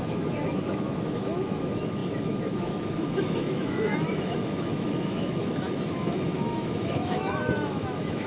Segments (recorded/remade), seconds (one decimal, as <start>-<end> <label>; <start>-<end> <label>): 0.0-8.3 remade